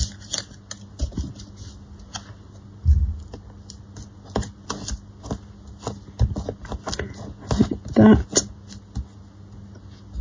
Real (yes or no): yes